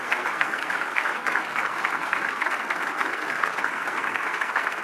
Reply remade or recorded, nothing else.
remade